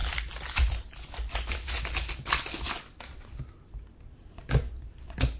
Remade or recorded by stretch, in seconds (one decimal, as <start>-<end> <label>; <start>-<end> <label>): 0.0-3.2 recorded; 3.2-5.4 remade